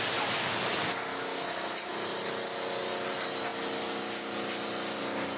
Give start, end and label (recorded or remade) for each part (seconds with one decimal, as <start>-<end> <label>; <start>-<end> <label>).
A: 0.0-1.1 recorded; 1.1-1.9 remade; 1.9-5.4 recorded